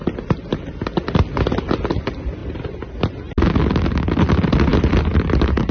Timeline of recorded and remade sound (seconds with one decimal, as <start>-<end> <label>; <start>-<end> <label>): 0.0-2.4 recorded; 2.4-3.3 remade; 3.3-4.7 recorded; 4.7-5.7 remade